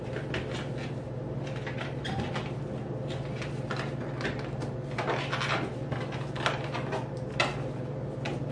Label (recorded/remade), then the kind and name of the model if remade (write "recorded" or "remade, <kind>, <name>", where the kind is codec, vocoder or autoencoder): recorded